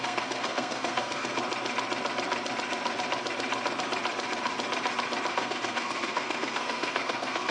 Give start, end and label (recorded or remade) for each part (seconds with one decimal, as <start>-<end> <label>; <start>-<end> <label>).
0.0-1.4 remade; 1.4-5.3 recorded; 5.3-7.5 remade